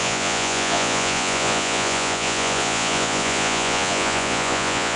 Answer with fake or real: fake